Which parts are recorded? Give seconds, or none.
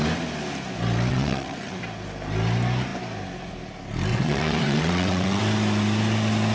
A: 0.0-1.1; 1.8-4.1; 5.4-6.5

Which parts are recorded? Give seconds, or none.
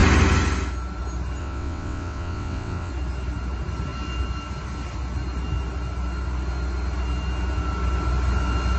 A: 0.0-1.4; 2.9-8.8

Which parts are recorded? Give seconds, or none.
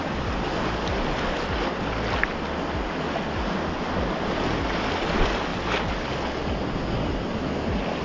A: 0.0-8.0